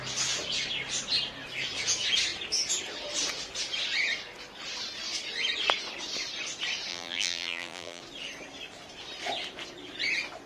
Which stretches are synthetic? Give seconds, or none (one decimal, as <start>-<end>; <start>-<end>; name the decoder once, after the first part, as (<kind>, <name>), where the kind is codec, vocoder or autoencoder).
6.9-8.0 (vocoder, BigVGAN v2)